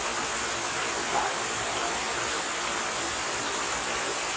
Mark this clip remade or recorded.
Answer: recorded